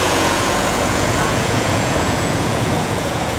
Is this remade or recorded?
remade